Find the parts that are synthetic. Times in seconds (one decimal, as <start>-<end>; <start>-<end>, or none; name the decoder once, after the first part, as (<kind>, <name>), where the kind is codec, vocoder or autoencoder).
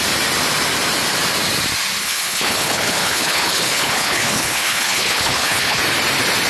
2.0-5.8 (codec, HILCodec)